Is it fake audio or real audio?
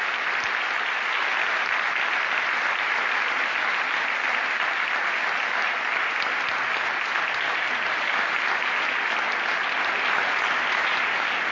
real